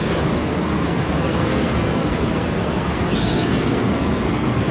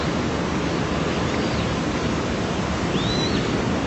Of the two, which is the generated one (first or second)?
first